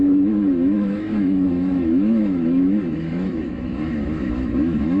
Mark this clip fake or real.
fake